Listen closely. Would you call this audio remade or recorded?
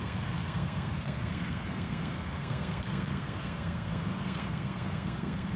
remade